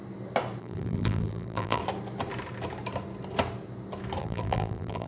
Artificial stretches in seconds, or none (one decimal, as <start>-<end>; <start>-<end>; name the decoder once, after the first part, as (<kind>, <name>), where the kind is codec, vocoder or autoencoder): 0.6-1.8 (vocoder, BigVGAN v2); 4.2-5.1